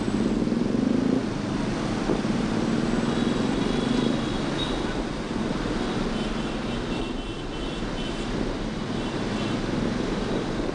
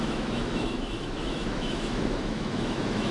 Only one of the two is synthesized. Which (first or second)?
second